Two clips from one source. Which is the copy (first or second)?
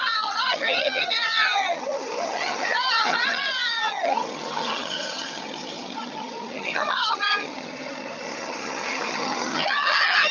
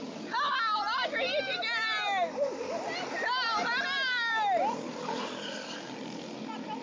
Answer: first